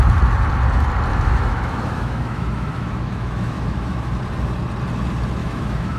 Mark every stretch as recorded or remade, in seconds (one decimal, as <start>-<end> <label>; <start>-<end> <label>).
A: 0.0-1.1 recorded; 1.1-4.2 remade; 4.2-5.4 recorded; 5.4-6.0 remade